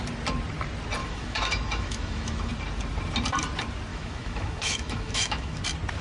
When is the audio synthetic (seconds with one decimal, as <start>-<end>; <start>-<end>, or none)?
1.0-2.5; 3.9-5.6